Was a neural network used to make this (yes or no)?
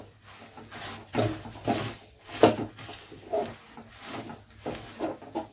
no